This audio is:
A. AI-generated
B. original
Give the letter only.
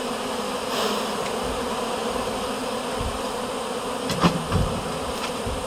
B